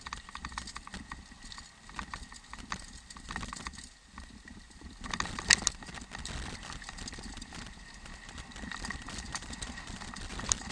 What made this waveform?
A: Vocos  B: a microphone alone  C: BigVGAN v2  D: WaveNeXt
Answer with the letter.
B